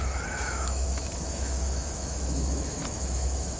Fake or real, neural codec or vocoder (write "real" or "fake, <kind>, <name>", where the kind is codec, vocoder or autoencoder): fake, autoencoder, DAC-VAE